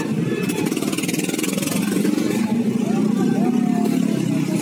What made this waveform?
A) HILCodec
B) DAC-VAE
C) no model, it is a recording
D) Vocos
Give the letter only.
C